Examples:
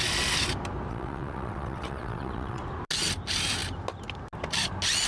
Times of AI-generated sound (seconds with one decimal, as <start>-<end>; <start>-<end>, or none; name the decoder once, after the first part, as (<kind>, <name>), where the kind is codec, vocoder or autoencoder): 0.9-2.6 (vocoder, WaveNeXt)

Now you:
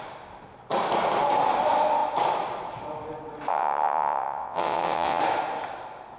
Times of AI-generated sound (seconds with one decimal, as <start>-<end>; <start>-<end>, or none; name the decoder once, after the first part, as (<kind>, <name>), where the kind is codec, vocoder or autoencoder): 3.5-5.2 (vocoder, WaveNeXt)

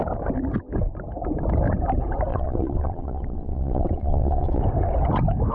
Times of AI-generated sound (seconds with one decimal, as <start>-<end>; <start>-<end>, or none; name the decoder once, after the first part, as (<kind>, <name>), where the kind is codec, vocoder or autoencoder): 2.3-4.6 (vocoder, WaveNeXt)